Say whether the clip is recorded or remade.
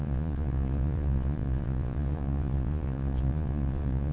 remade